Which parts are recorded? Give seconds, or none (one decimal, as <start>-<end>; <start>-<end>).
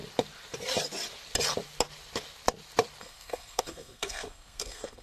0.0-3.0